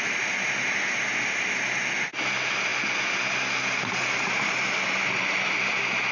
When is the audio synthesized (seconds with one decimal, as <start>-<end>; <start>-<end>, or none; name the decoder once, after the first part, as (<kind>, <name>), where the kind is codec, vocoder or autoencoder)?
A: none